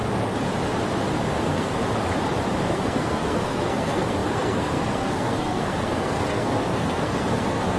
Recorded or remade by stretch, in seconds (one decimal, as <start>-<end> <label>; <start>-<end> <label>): 0.0-1.4 recorded; 1.4-1.8 remade; 1.8-2.7 recorded; 2.7-7.8 remade

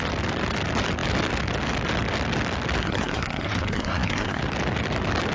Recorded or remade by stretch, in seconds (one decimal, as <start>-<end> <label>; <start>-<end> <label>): 0.0-2.8 recorded; 2.8-4.4 remade; 4.4-5.3 recorded